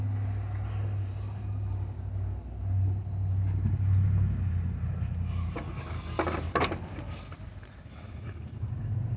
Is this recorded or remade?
recorded